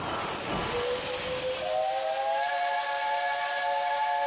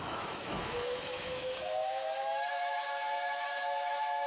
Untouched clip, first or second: first